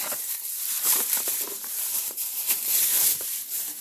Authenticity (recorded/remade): remade